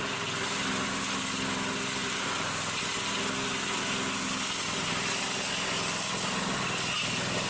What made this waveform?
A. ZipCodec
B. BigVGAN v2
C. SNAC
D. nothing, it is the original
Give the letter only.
D